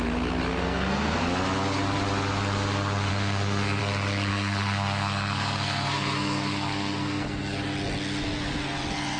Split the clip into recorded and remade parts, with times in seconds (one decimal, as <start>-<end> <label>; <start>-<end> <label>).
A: 0.0-0.5 recorded; 0.5-1.2 remade; 1.2-3.1 recorded; 3.1-3.8 remade; 3.8-4.3 recorded; 4.3-7.6 remade; 7.6-9.2 recorded